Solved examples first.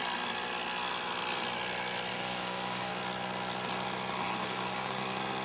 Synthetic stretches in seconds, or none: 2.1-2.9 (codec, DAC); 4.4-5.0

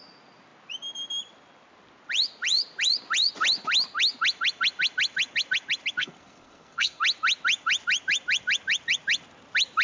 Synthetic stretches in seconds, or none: 6.0-7.0 (codec, SNAC)

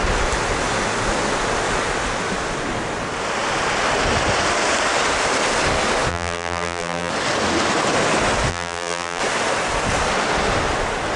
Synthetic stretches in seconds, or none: 6.1-7.1 (vocoder, BigVGAN v2); 8.5-9.2

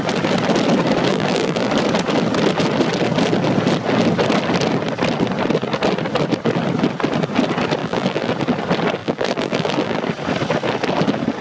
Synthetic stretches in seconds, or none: 1.1-1.7 (vocoder, BigVGAN v2); 7.8-8.3; 9.0-10.0